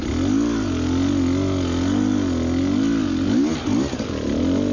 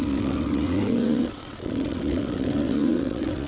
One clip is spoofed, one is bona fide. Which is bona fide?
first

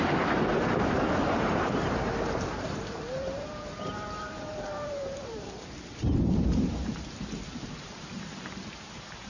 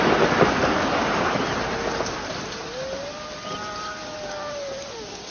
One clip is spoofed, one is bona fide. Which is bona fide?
second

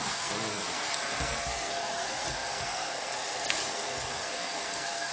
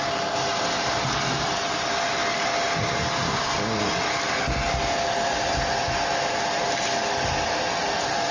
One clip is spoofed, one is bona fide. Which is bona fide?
second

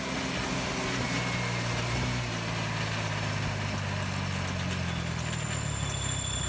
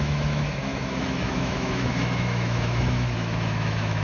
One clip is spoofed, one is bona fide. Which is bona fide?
first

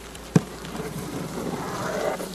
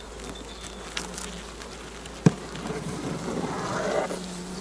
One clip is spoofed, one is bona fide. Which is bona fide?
second